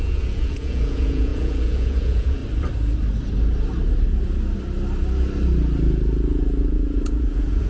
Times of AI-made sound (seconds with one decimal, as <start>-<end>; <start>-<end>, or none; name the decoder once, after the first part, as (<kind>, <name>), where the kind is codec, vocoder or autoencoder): 0.0-2.4 (vocoder, Vocos); 6.7-7.7